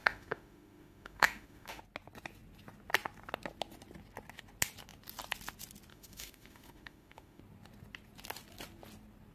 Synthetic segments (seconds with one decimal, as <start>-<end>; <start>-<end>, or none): 0.0-1.8; 5.9-7.4